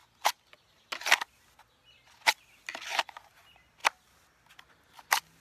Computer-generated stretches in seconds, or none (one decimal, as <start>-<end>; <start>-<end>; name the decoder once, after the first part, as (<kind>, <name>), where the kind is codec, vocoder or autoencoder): none